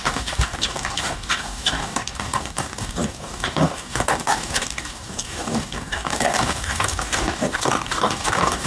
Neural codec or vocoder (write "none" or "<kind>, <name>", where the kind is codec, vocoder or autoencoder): codec, DAC